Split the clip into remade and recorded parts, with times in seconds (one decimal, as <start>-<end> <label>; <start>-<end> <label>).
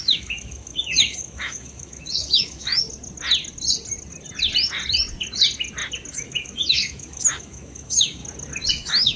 0.0-2.8 remade; 2.8-6.1 recorded; 6.1-8.2 remade; 8.2-8.7 recorded; 8.7-9.2 remade